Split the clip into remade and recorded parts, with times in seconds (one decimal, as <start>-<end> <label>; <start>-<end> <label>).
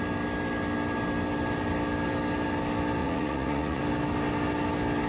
0.0-3.0 recorded; 3.0-3.8 remade; 3.8-5.1 recorded